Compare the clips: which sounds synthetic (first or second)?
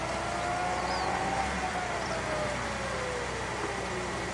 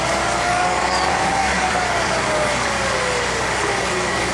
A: second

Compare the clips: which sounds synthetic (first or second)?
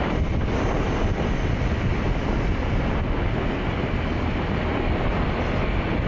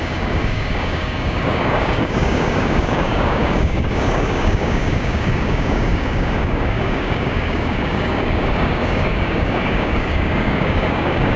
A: second